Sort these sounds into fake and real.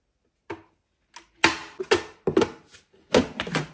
real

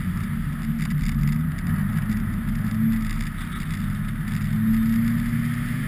real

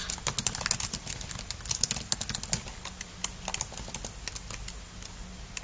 real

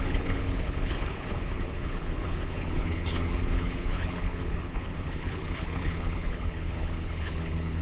fake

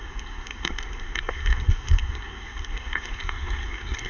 fake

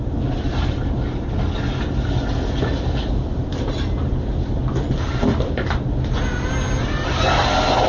real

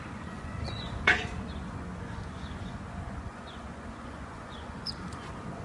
fake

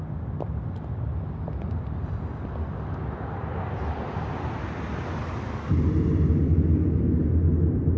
fake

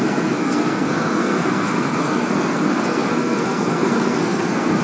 fake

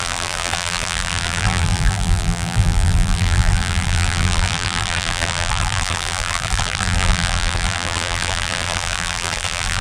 fake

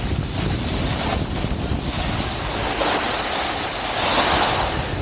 real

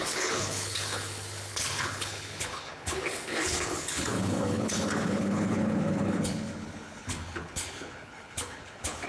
fake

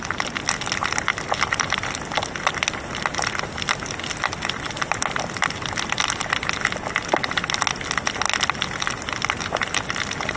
real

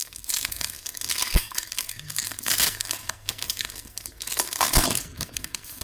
fake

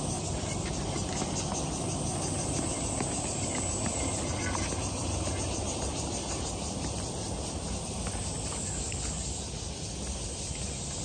real